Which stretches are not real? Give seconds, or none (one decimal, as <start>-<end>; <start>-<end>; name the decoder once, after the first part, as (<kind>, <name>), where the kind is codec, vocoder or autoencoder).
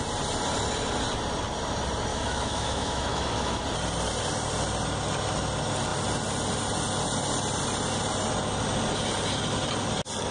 2.1-3.6 (autoencoder, DAC-VAE)